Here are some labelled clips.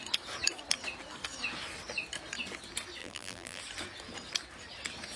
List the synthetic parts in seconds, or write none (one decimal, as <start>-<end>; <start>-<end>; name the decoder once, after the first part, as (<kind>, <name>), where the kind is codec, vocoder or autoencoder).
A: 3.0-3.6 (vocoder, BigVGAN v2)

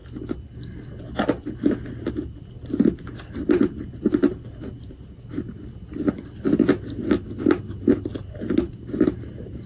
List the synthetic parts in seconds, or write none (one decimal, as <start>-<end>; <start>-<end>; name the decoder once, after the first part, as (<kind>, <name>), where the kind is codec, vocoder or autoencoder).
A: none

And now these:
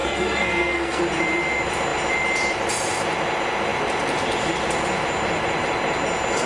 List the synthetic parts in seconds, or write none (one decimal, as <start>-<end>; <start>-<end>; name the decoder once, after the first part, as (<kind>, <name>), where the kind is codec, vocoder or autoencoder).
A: 0.0-1.0 (codec, SNAC)